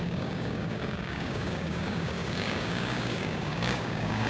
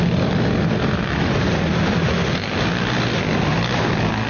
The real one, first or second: second